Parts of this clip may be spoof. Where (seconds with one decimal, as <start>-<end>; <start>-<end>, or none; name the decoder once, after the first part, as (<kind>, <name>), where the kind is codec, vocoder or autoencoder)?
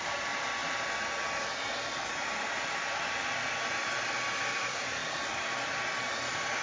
0.0-0.6 (vocoder, BigVGAN v2); 4.4-5.0